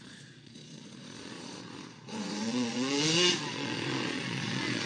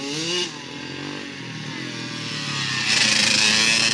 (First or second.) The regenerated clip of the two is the first